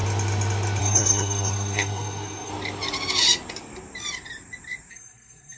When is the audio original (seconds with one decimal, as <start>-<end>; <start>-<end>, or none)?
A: 0.0-0.8; 2.5-4.9

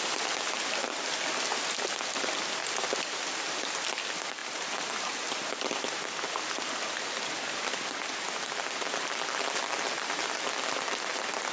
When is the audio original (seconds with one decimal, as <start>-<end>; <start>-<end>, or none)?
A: 0.0-11.5

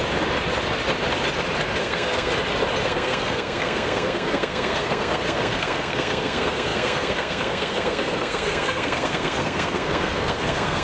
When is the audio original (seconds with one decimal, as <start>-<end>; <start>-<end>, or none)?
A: 0.0-1.8; 2.3-2.8

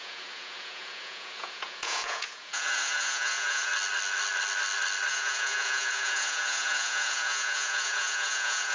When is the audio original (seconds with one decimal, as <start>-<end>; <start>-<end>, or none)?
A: 3.7-5.1

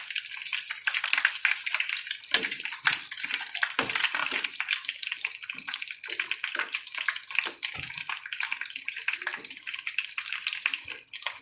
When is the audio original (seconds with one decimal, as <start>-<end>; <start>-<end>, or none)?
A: 0.0-11.4

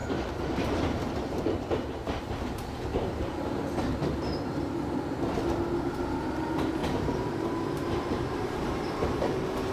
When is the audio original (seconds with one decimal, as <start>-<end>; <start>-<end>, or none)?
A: 2.2-2.9; 3.6-6.8

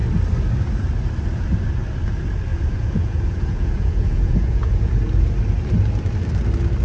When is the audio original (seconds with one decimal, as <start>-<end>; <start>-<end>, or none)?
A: 0.0-2.5; 5.0-6.8